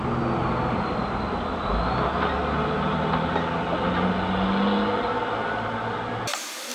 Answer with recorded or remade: recorded